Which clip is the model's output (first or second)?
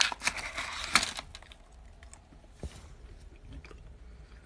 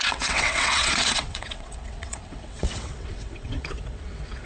second